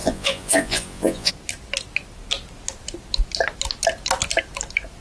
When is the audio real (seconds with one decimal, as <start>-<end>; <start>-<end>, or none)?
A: 1.3-5.0